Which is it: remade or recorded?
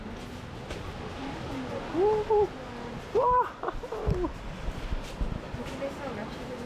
recorded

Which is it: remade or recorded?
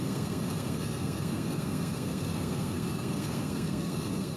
remade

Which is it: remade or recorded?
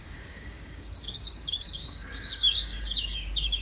remade